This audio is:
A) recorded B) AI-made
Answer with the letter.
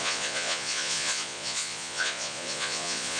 B